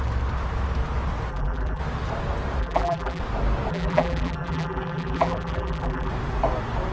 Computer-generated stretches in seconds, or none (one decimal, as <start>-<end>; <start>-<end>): 1.3-1.8; 2.6-3.2; 3.7-6.1